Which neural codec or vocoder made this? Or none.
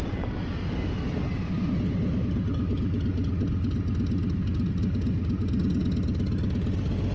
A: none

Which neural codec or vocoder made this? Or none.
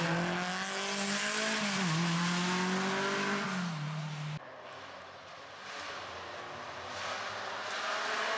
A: none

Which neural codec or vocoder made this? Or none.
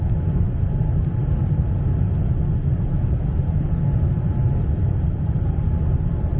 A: none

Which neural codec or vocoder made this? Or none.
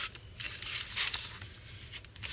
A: none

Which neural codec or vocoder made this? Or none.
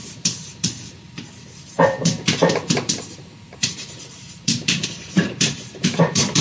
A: vocoder, BigVGAN v2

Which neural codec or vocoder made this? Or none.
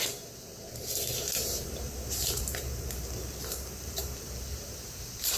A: vocoder, BigVGAN v2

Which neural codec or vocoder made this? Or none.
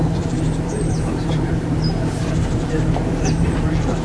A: vocoder, BigVGAN v2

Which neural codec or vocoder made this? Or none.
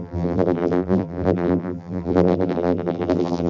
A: vocoder, BigVGAN v2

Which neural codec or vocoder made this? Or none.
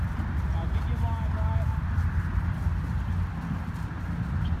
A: none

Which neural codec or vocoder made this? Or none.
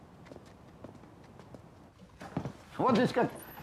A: none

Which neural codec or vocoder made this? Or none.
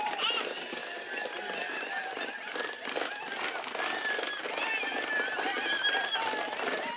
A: vocoder, BigVGAN v2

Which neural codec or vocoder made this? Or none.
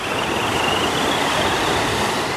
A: none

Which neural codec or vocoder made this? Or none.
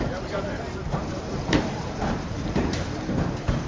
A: vocoder, BigVGAN v2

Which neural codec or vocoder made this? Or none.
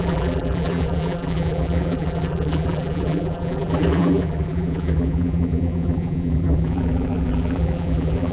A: vocoder, BigVGAN v2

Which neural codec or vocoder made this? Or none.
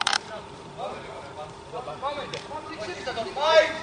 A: vocoder, BigVGAN v2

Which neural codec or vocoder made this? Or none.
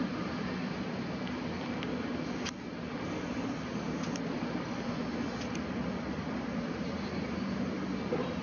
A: none